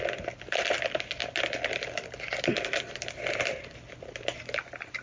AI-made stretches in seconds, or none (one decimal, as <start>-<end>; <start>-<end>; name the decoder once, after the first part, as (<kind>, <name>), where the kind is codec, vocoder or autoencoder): none